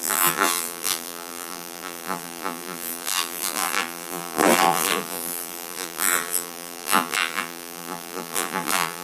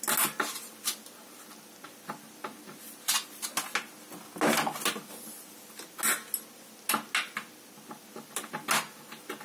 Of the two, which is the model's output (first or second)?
first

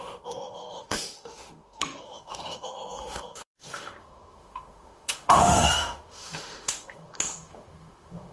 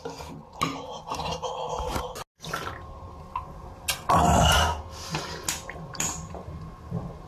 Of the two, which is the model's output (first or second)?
first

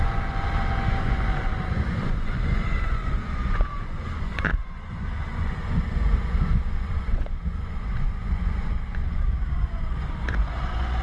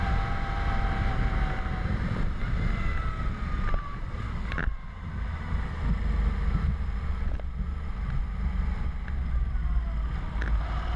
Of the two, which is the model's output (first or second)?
first